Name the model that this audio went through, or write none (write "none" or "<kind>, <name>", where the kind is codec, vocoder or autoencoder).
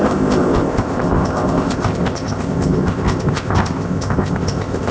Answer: codec, ZipCodec